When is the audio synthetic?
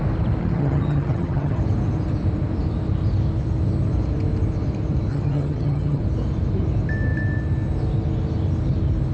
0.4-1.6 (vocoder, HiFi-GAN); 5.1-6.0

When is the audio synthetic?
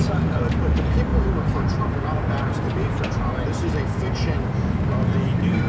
none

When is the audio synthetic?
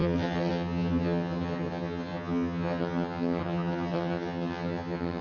0.0-5.2 (vocoder, HiFi-GAN)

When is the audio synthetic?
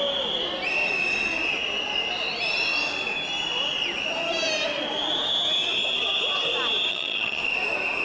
6.9-7.4 (vocoder, HiFi-GAN)